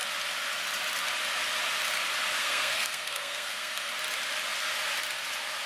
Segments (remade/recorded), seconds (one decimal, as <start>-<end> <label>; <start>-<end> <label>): 0.0-2.4 recorded; 2.4-3.9 remade; 3.9-5.7 recorded